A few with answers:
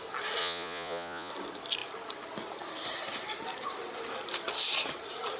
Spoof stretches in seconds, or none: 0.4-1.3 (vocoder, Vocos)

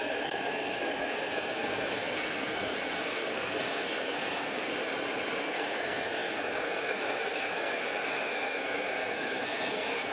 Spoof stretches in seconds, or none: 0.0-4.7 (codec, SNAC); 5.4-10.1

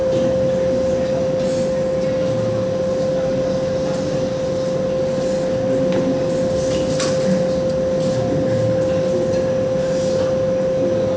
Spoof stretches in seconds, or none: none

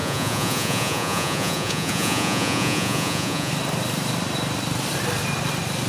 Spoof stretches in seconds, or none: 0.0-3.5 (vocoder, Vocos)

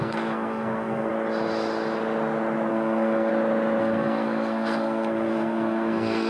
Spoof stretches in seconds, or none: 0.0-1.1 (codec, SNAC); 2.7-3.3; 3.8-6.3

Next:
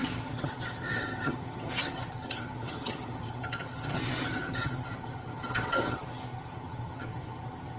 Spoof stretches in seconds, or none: 0.0-7.8 (vocoder, HiFi-GAN)

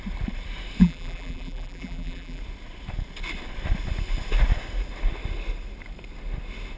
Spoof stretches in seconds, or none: 0.8-2.4 (vocoder, BigVGAN v2)